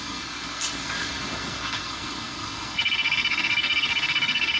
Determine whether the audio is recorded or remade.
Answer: remade